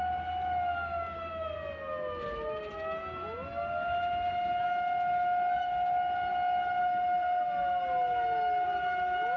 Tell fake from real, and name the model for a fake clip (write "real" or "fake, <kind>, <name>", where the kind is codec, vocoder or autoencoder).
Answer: real